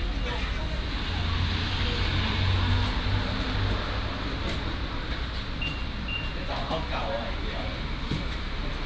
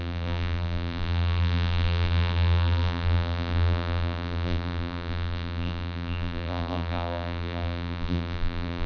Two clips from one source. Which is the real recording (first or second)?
first